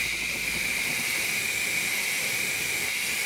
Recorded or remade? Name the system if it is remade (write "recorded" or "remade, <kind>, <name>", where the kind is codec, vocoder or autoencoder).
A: recorded